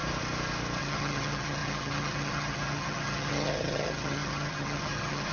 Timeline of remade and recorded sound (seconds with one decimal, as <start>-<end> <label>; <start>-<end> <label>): 0.0-0.8 recorded; 0.8-5.3 remade